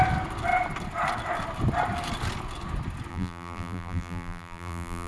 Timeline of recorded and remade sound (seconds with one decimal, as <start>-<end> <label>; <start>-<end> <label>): 0.0-3.1 recorded; 3.1-5.1 remade